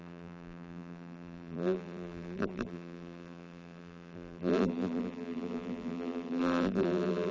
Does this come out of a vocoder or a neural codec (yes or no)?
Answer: yes